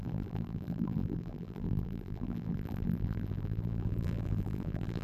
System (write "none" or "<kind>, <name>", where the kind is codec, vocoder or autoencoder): vocoder, BigVGAN v2